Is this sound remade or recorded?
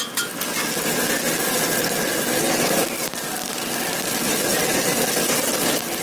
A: recorded